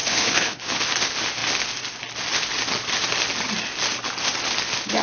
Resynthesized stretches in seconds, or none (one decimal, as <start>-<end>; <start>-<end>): 0.0-0.8